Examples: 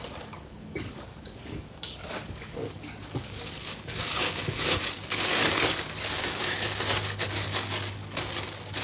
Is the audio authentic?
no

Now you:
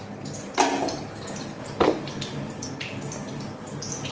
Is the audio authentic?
yes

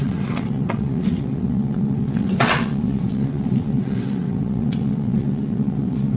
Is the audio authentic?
no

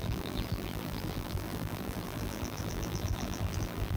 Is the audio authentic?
no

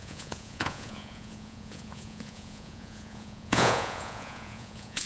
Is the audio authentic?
no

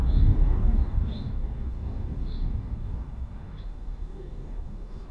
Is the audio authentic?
no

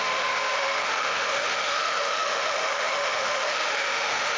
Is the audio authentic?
no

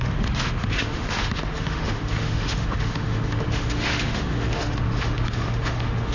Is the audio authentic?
no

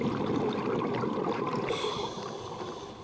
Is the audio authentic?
yes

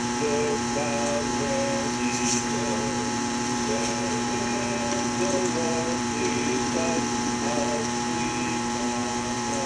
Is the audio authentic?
no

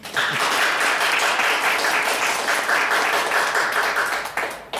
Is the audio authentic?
yes